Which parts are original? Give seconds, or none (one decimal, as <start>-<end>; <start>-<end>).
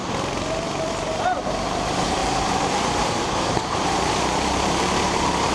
0.0-0.9